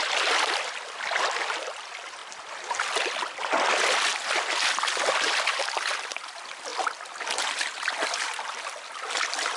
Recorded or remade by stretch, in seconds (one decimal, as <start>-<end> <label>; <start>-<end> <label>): 0.0-2.2 remade; 2.2-2.8 recorded; 2.8-4.1 remade; 4.1-5.5 recorded; 5.5-6.7 remade; 6.7-9.6 recorded